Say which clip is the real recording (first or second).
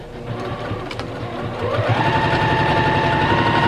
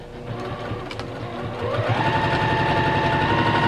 second